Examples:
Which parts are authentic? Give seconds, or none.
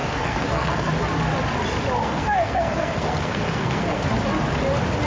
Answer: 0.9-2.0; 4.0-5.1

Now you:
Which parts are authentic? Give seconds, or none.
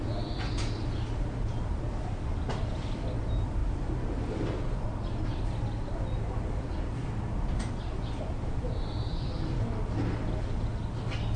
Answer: 0.0-11.4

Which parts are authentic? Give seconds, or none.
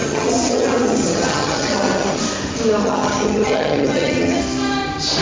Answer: 2.2-2.8; 4.4-5.2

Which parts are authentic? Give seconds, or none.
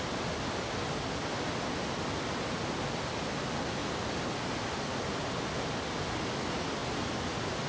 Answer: 0.0-7.7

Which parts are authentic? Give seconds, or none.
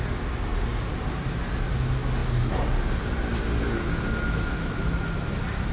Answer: 0.0-5.7